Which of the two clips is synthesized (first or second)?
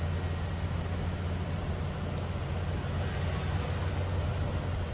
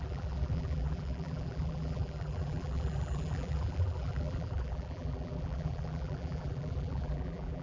second